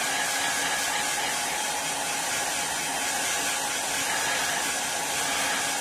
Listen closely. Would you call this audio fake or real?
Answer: real